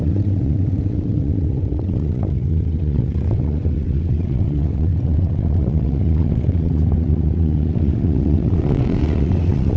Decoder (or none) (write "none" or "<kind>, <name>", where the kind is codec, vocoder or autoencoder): vocoder, WaveNeXt